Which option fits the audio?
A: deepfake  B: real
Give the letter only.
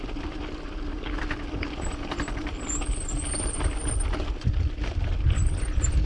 B